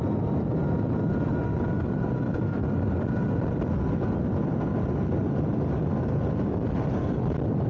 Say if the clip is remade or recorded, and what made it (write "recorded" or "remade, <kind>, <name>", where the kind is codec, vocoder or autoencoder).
recorded